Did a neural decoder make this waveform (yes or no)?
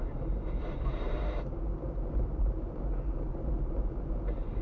yes